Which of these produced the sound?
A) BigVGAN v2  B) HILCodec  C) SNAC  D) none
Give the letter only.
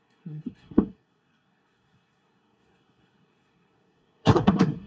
C